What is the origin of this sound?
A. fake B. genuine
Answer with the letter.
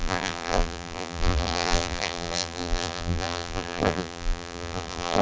A